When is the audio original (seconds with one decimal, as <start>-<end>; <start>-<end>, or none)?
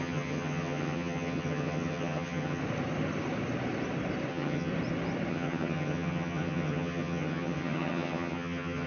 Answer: 2.6-4.3; 4.7-5.3